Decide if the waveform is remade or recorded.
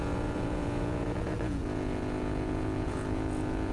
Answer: remade